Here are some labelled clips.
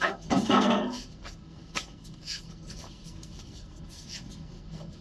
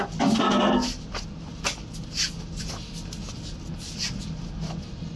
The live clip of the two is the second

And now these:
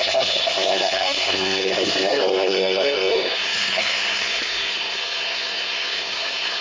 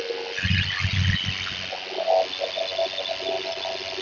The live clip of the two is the second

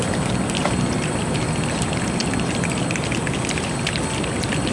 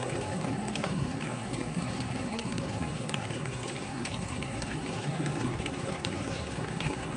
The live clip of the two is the first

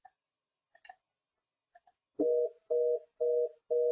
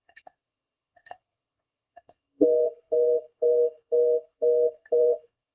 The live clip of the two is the first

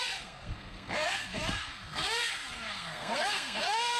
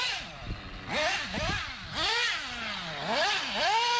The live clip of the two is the second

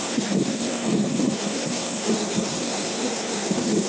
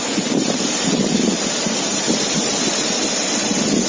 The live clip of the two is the second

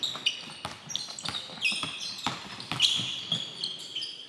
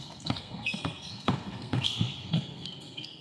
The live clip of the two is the first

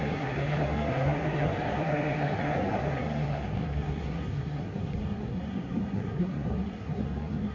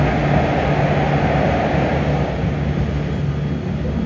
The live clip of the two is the second